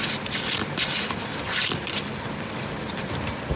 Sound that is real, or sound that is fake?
real